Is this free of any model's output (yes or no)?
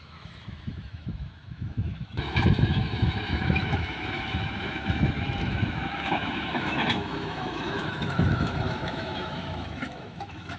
no